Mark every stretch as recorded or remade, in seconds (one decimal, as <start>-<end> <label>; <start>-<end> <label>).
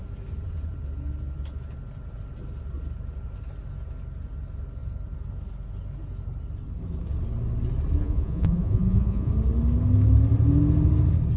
0.0-8.0 recorded; 8.0-9.3 remade; 9.3-11.4 recorded